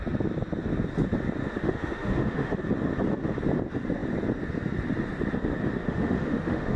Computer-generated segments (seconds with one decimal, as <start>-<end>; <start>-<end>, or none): 1.4-2.5; 5.8-6.8